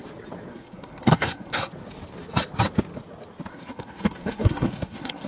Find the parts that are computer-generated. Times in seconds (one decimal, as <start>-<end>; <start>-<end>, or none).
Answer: 0.5-1.7; 3.5-5.3